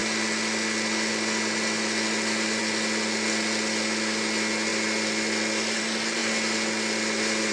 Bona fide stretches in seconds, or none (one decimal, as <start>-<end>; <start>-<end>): 0.0-7.5